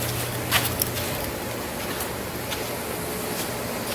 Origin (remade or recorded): recorded